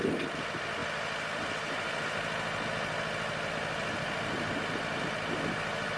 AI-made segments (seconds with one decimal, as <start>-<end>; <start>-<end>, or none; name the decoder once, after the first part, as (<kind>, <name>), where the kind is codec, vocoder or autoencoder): none